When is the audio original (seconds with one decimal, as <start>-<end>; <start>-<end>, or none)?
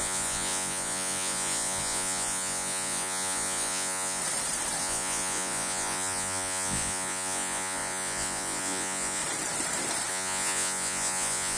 4.2-4.8; 9.2-10.1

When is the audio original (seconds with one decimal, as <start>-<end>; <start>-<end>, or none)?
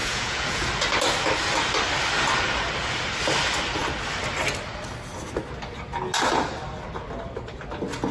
0.7-8.1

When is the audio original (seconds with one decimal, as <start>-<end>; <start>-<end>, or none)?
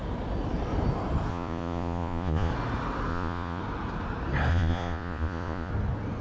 0.0-1.3; 2.5-3.1; 3.6-4.5; 5.7-6.2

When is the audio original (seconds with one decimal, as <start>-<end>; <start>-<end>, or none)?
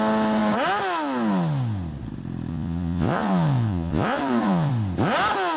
0.0-2.5; 4.7-5.6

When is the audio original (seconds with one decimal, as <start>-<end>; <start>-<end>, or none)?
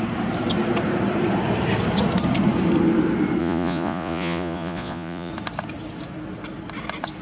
0.0-3.4; 5.3-7.2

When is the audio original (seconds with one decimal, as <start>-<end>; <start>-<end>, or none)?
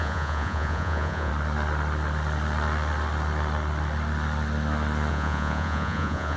1.3-5.1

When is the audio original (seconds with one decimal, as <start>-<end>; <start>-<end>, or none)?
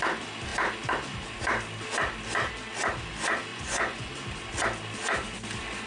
0.0-3.5; 4.1-5.9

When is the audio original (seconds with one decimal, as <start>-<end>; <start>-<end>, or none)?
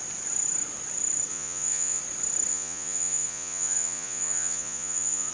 0.0-1.3; 2.0-2.5